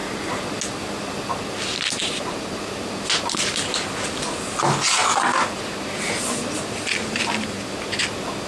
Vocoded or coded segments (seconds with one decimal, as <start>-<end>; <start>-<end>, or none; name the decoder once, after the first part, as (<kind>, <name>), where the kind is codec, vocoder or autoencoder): none

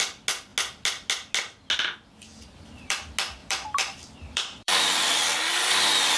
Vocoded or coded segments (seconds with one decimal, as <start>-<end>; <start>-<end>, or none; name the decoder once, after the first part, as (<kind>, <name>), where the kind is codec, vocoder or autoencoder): 2.3-3.0 (vocoder, BigVGAN v2); 3.4-4.8

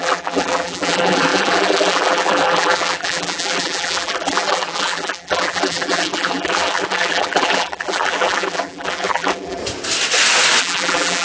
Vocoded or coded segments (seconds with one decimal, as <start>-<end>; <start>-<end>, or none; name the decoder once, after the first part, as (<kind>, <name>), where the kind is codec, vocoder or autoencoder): 0.0-9.6 (vocoder, BigVGAN v2); 10.6-11.2

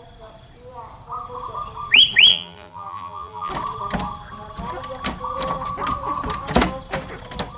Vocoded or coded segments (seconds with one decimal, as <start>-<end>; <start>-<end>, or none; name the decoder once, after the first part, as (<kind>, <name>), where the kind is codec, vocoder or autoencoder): 2.3-3.5 (vocoder, BigVGAN v2)

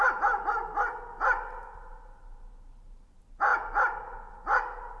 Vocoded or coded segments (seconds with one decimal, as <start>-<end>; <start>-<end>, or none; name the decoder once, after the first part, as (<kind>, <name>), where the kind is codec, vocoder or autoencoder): none